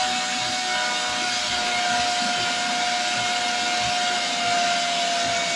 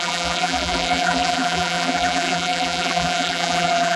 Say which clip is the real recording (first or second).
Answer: first